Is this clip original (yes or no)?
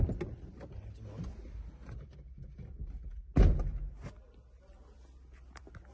yes